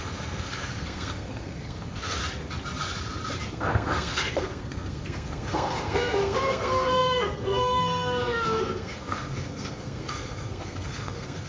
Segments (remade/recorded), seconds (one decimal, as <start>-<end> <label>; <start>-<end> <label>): 0.0-2.2 remade; 2.2-3.5 recorded; 3.5-11.5 remade

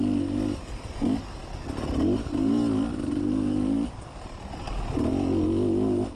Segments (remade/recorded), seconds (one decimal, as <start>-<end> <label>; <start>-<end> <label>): 0.0-6.2 recorded

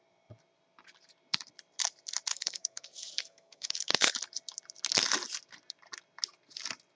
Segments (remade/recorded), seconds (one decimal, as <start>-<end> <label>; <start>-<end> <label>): 0.0-2.3 recorded; 2.3-4.1 remade; 4.1-6.9 recorded

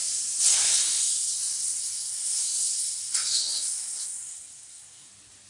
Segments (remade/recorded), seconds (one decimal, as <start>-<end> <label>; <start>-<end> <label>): 0.0-0.5 recorded; 0.5-1.3 remade; 1.3-1.8 recorded; 1.8-5.1 remade; 5.1-5.5 recorded

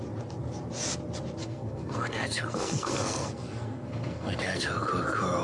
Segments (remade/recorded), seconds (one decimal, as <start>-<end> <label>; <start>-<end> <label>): 0.0-1.4 recorded; 1.4-4.6 remade; 4.6-5.4 recorded

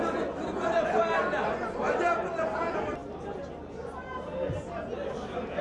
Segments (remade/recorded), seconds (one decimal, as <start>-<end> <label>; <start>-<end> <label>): 0.0-5.6 recorded

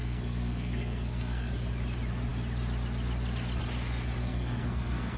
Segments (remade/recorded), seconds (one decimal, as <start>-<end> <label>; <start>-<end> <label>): 0.0-1.5 remade; 1.5-4.2 recorded; 4.2-5.2 remade